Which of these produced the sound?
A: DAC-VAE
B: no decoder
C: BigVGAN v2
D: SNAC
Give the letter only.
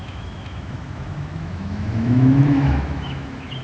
A